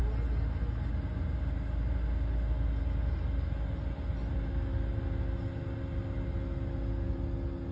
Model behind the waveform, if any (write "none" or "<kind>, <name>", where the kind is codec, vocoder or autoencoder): none